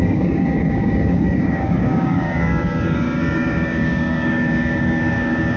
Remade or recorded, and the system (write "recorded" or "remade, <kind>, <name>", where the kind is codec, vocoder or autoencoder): remade, codec, DAC